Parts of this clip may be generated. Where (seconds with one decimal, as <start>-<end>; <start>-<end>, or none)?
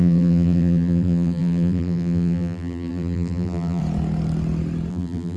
0.0-3.8; 4.9-5.4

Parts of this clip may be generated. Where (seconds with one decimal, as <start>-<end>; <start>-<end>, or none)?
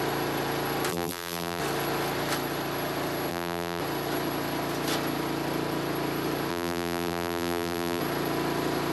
0.9-1.6; 3.3-3.8; 6.5-8.0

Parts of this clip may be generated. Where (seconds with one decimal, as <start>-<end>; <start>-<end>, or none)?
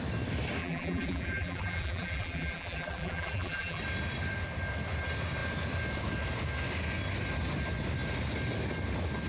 0.6-3.8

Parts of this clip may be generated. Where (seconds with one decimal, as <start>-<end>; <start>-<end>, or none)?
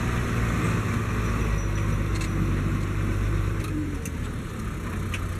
2.1-4.6